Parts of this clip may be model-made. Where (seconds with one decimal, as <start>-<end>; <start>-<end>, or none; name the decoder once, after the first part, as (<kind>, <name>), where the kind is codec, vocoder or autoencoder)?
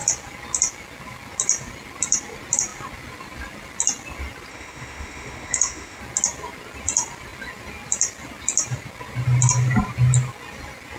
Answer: 4.5-6.0 (autoencoder, DAC-VAE)